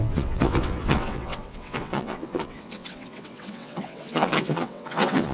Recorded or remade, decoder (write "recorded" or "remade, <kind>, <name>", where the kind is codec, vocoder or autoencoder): remade, vocoder, WaveNeXt